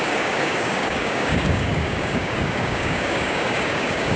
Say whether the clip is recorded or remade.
remade